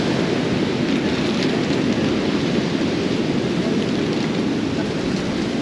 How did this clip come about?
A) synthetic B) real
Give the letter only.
B